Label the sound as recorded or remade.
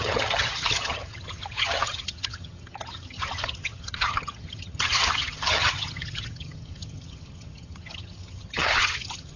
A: remade